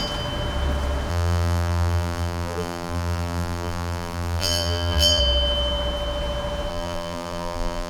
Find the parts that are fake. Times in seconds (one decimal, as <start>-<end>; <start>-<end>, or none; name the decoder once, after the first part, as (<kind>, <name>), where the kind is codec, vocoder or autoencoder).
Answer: 1.1-5.2 (vocoder, BigVGAN v2); 6.7-7.9